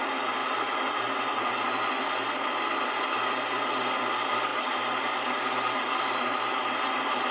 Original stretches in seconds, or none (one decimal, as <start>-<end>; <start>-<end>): 0.0-0.4; 1.5-4.5; 6.4-7.3